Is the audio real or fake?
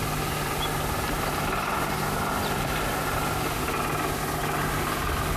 real